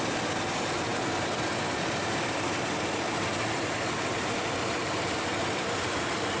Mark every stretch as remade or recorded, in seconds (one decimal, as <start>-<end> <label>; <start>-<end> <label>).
0.0-6.4 recorded